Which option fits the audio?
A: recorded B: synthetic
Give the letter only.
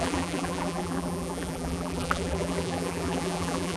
B